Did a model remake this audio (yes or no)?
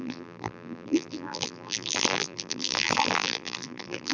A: yes